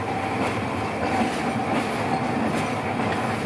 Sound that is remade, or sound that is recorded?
recorded